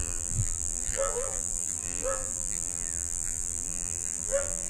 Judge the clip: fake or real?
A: fake